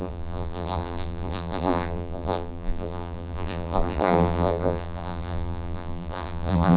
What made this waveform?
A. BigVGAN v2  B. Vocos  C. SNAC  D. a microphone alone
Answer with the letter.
A